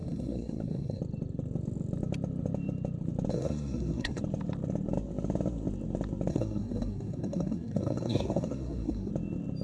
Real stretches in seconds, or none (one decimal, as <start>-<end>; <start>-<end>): 1.0-3.3; 4.2-6.3; 9.1-9.6